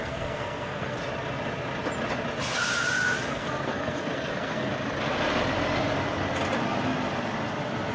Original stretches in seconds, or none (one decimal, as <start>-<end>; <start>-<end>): 1.0-3.3; 4.7-7.9